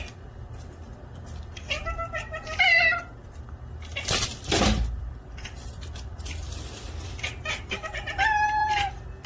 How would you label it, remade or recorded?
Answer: remade